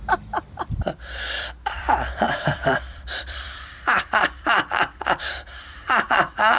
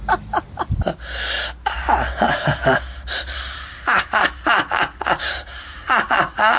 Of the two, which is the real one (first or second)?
second